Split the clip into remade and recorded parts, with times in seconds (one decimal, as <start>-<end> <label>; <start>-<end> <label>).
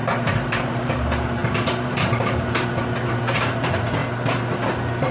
0.0-4.0 remade; 4.0-5.1 recorded